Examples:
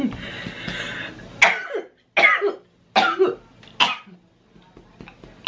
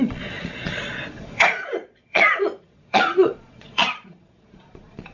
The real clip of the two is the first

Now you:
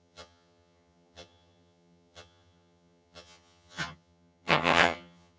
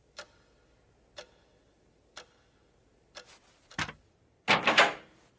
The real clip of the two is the second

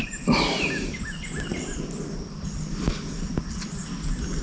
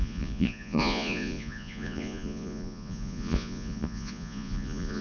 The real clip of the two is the first